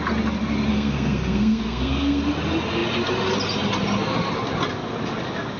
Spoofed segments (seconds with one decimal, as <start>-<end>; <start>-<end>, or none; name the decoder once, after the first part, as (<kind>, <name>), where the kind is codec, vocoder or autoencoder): 0.7-2.2 (codec, SNAC)